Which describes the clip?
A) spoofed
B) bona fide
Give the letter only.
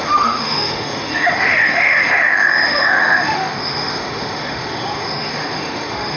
A